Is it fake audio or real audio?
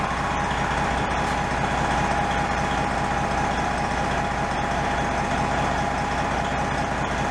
real